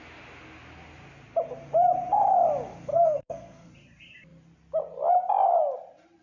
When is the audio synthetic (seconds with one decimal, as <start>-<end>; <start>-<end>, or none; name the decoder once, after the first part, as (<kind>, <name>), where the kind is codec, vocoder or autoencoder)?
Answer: 2.9-3.7 (codec, SNAC)